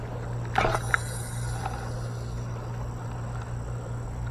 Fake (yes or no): no